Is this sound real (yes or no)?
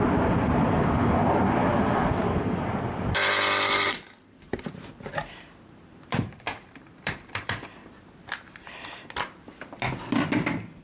no